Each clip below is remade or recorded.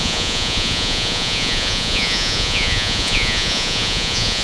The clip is remade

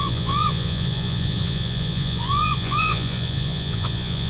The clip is remade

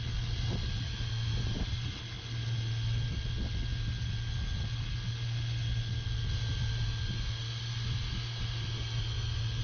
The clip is recorded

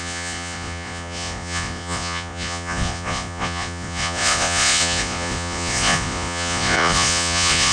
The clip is remade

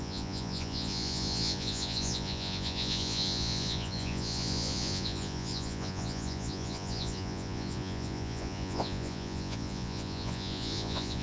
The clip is remade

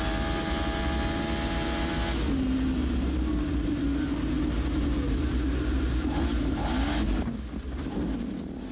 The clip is recorded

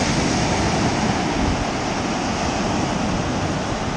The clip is recorded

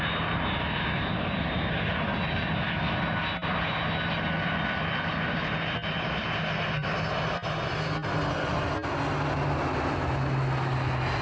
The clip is recorded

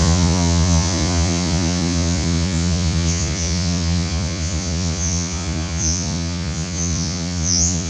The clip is remade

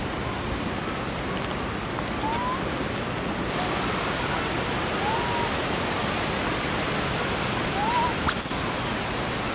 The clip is recorded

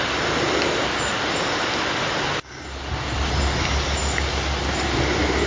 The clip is recorded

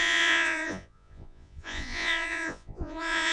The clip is remade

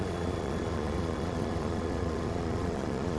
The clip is remade